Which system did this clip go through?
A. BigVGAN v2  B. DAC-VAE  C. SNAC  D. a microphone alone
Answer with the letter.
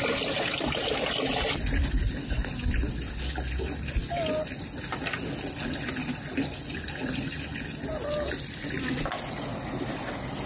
D